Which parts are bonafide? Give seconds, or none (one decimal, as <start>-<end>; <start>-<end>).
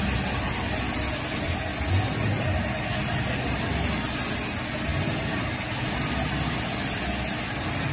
0.0-7.9